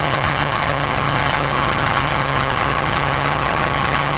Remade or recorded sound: remade